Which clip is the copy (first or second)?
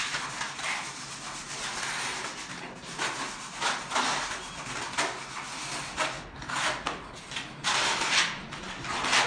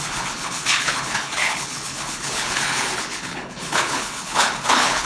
second